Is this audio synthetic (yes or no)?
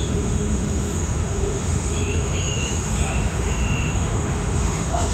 yes